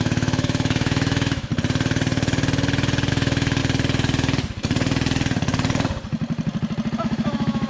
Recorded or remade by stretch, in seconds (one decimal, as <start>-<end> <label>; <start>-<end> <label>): 0.0-1.5 remade; 1.5-3.1 recorded; 3.1-3.6 remade; 3.6-7.0 recorded; 7.0-7.7 remade